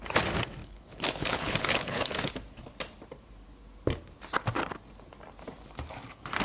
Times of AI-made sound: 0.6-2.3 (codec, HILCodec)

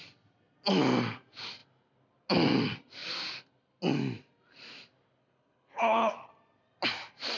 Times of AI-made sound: 5.2-6.3 (codec, HILCodec)

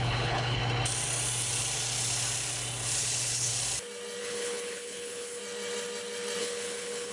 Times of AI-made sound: 0.0-0.6 (codec, HILCodec); 3.0-3.5; 4.2-5.4; 6.4-7.1

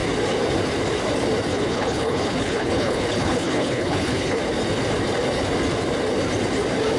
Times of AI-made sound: 1.5-4.4 (codec, HILCodec)